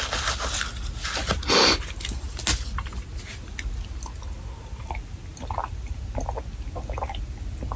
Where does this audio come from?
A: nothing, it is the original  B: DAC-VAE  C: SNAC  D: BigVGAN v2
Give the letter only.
A